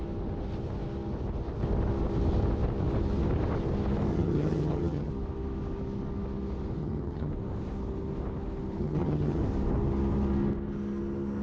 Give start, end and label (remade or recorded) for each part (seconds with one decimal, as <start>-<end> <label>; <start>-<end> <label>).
0.0-4.1 recorded; 4.1-5.1 remade; 5.1-6.8 recorded; 6.8-7.3 remade; 7.3-8.8 recorded; 8.8-9.4 remade; 9.4-11.4 recorded